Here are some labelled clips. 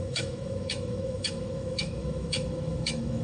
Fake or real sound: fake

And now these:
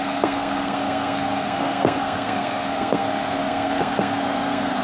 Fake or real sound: fake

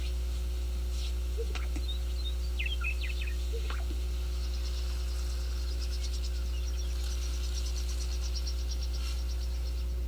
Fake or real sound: real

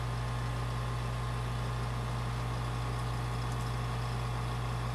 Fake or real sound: real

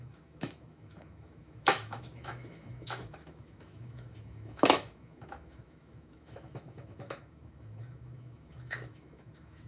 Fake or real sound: fake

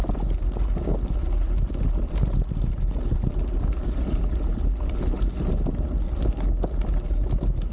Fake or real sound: real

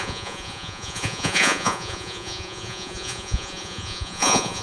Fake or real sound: fake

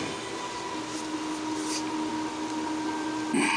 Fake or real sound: real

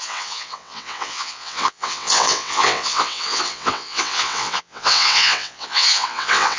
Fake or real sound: fake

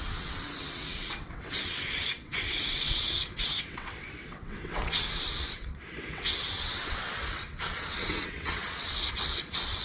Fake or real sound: fake